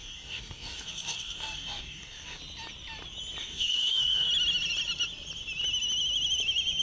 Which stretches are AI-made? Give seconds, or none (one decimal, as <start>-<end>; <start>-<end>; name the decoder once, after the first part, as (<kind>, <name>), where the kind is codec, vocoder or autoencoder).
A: 0.0-2.4 (codec, DAC); 3.4-4.3